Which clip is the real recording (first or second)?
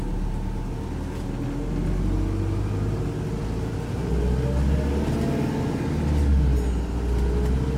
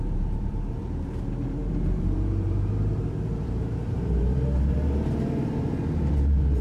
first